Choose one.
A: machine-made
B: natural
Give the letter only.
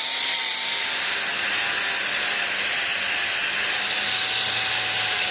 B